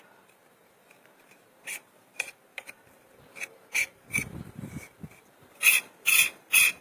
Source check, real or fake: fake